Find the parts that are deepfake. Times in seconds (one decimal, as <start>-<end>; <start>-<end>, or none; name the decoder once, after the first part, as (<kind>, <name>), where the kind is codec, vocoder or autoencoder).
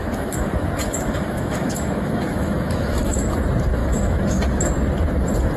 0.0-3.4 (autoencoder, DAC-VAE); 3.8-4.4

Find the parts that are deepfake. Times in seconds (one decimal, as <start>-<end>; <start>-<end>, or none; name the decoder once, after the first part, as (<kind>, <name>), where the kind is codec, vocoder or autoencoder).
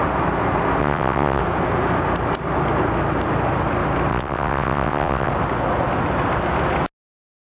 0.8-1.4 (vocoder, WaveNeXt); 4.1-5.3